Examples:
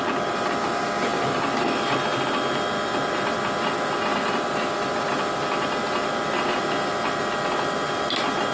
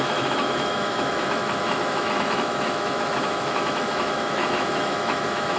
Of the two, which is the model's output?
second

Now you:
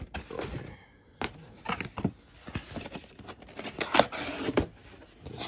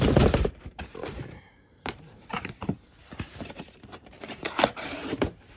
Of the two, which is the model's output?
second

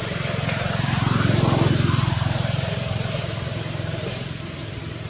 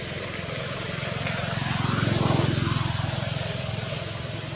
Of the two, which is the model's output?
first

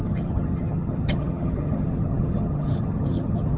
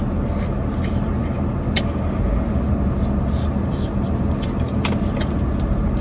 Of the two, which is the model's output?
first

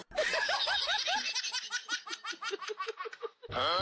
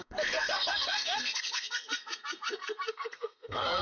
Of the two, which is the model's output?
second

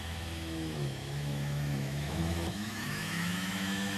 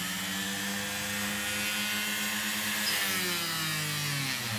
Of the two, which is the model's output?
first